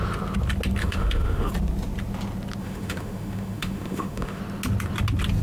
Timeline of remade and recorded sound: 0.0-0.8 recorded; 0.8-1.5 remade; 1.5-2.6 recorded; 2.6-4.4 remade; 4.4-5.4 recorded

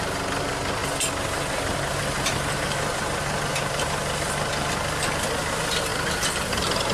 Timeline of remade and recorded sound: 0.0-6.9 recorded

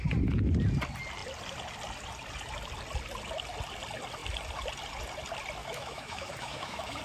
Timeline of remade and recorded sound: 0.0-5.6 recorded; 5.6-7.0 remade

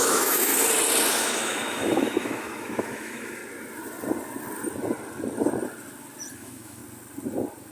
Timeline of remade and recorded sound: 0.0-0.5 remade; 0.5-1.1 recorded; 1.1-3.4 remade; 3.4-6.3 recorded; 6.3-6.8 remade; 6.8-7.7 recorded